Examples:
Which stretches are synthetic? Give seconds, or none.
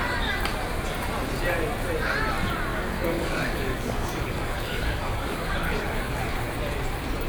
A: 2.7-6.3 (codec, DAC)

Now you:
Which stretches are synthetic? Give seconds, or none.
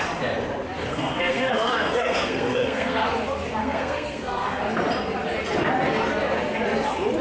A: 0.9-3.1 (codec, SNAC); 3.6-4.7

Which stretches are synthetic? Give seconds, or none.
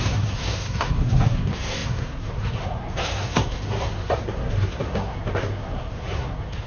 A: 0.0-6.7 (codec, SNAC)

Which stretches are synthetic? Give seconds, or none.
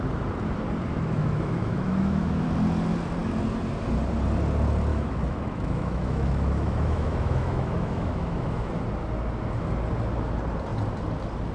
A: 0.9-2.5 (autoencoder, DAC-VAE); 4.9-8.7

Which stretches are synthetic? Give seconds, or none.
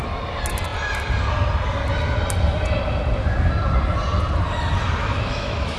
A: 5.0-5.8 (autoencoder, DAC-VAE)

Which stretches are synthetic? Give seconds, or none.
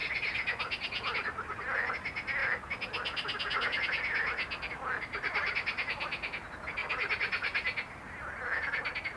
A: none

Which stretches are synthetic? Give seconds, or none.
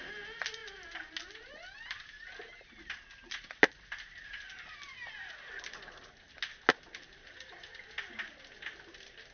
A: none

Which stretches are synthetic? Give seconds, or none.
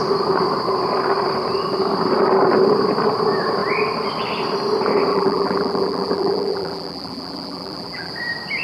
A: 5.1-8.1 (vocoder, BigVGAN v2)